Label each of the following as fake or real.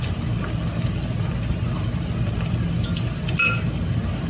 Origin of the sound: real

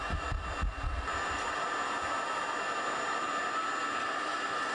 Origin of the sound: real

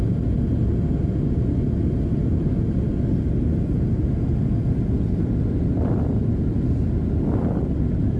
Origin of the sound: real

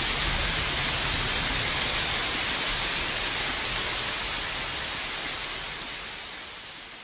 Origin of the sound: real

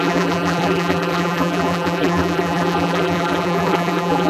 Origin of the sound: fake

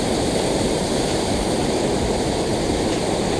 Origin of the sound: fake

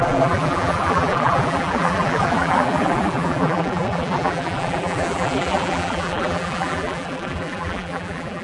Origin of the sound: fake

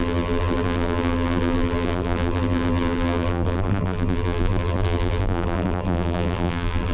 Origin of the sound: fake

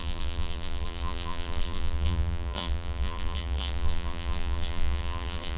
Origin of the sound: fake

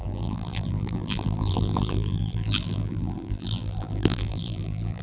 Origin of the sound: fake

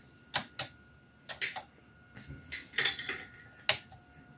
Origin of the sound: real